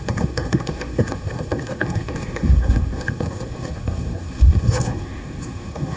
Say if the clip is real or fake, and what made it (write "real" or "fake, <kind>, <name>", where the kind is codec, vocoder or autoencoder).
fake, codec, SNAC